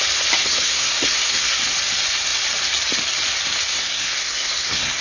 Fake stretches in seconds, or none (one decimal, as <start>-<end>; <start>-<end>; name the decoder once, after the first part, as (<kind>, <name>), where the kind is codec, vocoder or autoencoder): 0.4-1.5 (codec, SNAC); 3.7-5.0